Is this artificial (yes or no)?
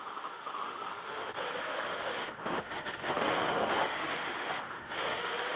yes